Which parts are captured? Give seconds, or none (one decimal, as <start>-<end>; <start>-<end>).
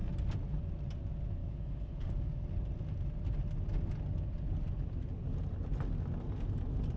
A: 0.0-1.4; 2.4-7.0